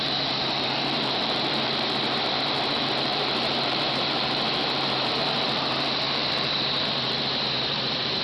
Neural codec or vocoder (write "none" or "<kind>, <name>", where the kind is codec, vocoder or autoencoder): vocoder, BigVGAN v2